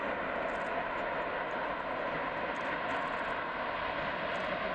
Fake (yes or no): no